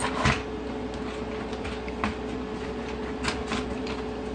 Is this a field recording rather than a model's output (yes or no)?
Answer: yes